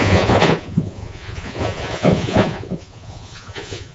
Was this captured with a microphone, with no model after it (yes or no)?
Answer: no